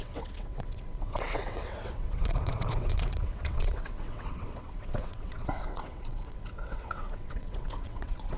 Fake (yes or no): yes